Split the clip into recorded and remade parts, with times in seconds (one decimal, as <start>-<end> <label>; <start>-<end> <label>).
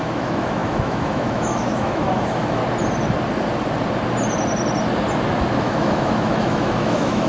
0.0-2.6 remade; 2.6-5.6 recorded; 5.6-7.3 remade